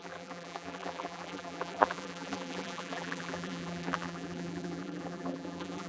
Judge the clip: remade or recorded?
remade